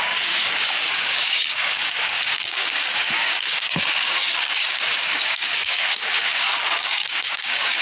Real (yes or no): no